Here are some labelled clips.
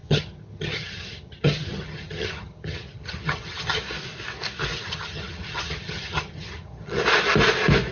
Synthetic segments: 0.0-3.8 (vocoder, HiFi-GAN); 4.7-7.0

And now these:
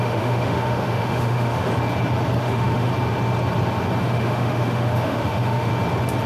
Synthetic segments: 0.0-1.7 (autoencoder, DAC-VAE); 2.4-2.9; 4.0-5.7

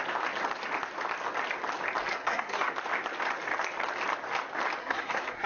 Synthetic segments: 2.1-2.7 (codec, SNAC); 4.8-5.5

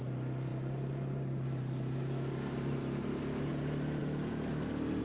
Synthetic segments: none

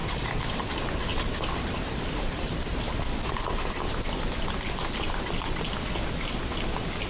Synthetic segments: 0.0-0.6 (vocoder, BigVGAN v2); 1.1-3.0

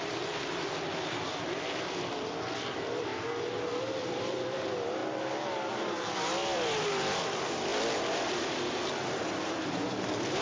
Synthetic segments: 0.0-3.1 (vocoder, BigVGAN v2); 3.6-5.0; 5.7-10.4

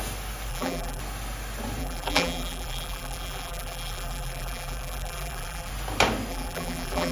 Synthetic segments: 0.5-1.0 (vocoder, BigVGAN v2); 1.8-5.7; 6.3-7.1

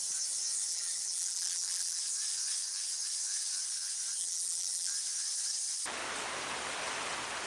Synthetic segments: 0.7-2.0 (vocoder, BigVGAN v2); 4.2-4.9